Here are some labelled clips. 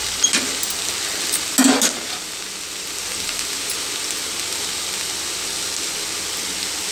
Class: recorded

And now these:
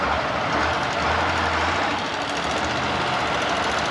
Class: recorded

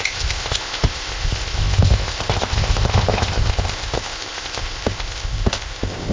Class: remade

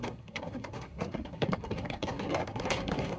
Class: remade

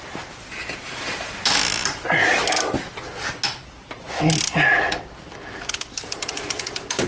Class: recorded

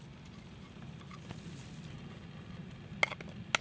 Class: recorded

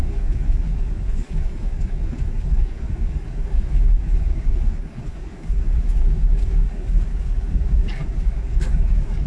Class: remade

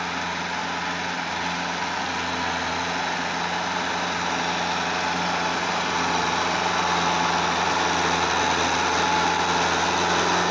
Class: recorded